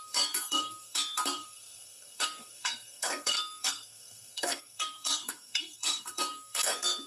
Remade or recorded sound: remade